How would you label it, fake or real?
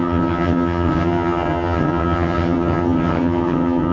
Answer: fake